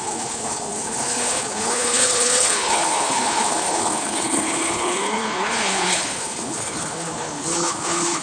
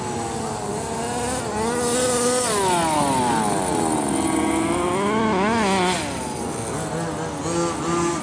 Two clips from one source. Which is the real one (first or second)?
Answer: second